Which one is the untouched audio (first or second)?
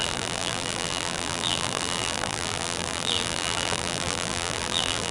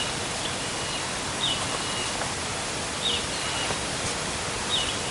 second